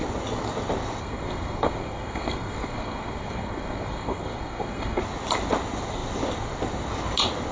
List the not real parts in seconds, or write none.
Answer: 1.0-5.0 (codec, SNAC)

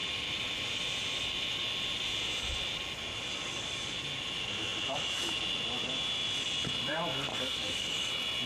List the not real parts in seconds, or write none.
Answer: 3.3-3.9 (codec, DAC); 7.3-8.1

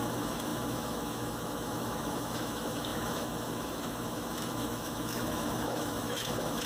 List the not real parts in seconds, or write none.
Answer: 0.0-6.7 (autoencoder, DAC-VAE)